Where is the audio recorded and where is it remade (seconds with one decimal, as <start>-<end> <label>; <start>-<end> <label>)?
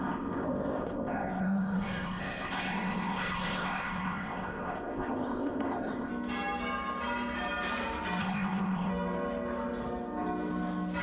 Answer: 0.0-6.1 remade; 6.1-8.2 recorded; 8.2-8.9 remade; 8.9-11.0 recorded